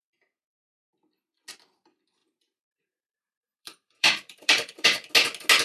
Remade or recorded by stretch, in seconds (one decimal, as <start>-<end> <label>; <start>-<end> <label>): 0.0-2.2 recorded; 2.2-5.1 remade; 5.1-5.6 recorded